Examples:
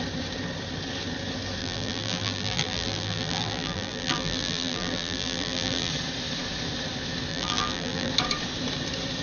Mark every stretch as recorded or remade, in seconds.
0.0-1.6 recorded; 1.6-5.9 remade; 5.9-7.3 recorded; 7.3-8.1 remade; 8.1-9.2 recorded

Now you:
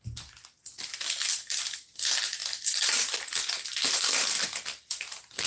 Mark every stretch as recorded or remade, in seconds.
0.0-5.5 recorded

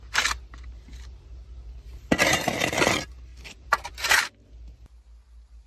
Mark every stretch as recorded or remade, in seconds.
0.0-3.3 recorded; 3.3-3.9 remade; 3.9-5.7 recorded

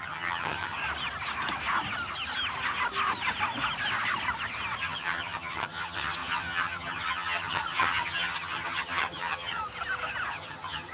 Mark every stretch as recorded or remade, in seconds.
0.0-0.8 remade; 0.8-4.8 recorded; 4.8-9.6 remade; 9.6-10.3 recorded; 10.3-10.9 remade

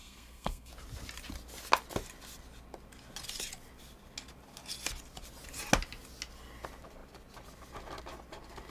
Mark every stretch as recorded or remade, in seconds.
0.0-0.7 remade; 0.7-8.7 recorded